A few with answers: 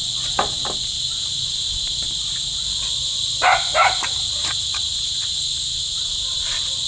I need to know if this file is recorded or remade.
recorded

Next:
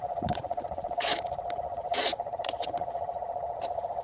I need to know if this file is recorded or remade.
remade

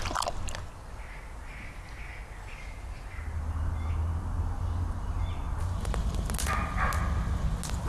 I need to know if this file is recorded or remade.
recorded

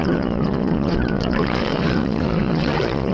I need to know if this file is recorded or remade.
remade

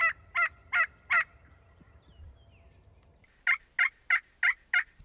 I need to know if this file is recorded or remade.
recorded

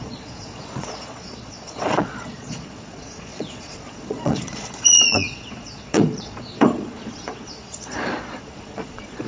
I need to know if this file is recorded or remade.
remade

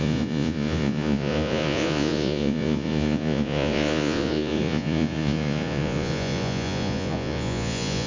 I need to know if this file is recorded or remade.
remade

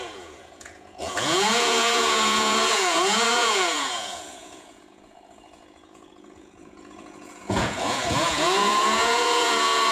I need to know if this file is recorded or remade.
remade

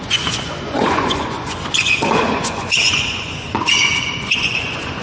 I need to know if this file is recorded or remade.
remade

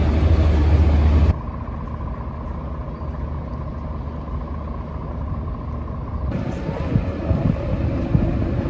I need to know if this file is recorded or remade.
recorded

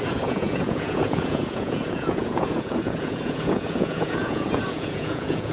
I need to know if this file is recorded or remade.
remade